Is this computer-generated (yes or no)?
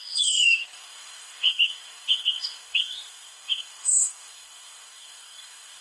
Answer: yes